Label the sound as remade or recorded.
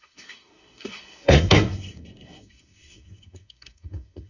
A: remade